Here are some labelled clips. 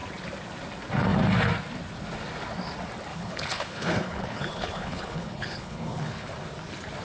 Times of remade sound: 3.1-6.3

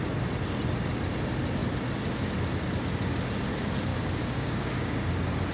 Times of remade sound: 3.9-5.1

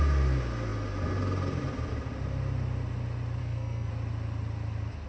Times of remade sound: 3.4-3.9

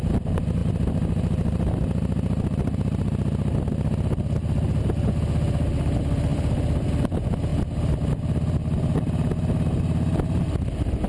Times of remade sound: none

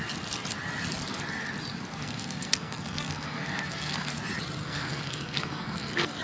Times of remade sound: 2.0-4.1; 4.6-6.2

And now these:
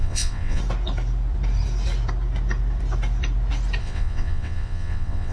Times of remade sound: 0.0-0.6; 3.8-5.3

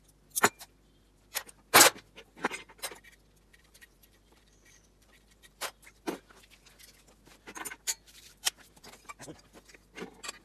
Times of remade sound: 3.5-6.0; 7.3-9.1